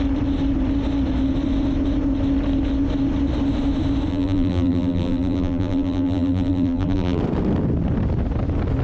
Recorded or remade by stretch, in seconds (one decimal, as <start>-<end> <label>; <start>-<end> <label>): 0.0-4.1 recorded; 4.1-7.2 remade; 7.2-8.8 recorded